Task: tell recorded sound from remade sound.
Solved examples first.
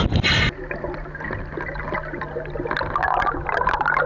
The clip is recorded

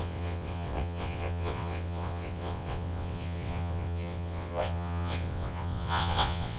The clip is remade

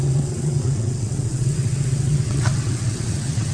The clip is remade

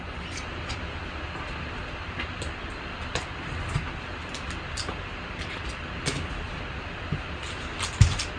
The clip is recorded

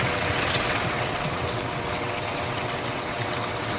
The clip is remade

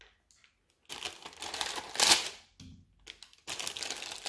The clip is recorded